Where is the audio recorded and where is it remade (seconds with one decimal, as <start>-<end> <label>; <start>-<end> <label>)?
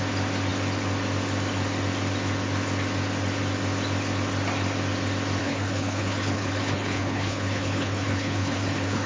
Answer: 0.0-5.4 recorded; 5.4-9.1 remade